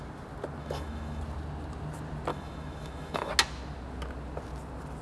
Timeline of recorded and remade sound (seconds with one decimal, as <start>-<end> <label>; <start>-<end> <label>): 0.0-0.6 recorded; 0.6-1.2 remade; 1.2-2.3 recorded; 2.3-3.3 remade; 3.3-5.0 recorded